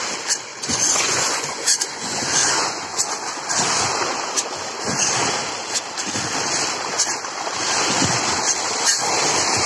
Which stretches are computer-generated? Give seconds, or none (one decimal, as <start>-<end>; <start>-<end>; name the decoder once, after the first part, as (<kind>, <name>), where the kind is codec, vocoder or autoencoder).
0.5-3.0 (vocoder, Vocos)